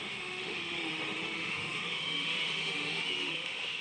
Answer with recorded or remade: remade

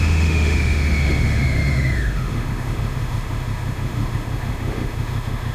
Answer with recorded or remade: remade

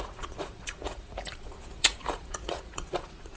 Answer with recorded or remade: remade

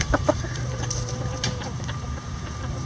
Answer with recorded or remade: remade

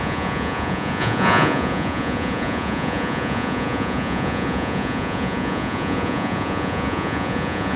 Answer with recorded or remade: remade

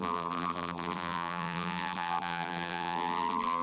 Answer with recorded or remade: remade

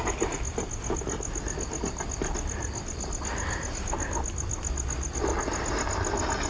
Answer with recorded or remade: recorded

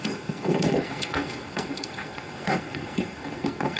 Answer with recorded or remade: remade